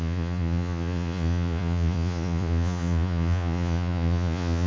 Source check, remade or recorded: remade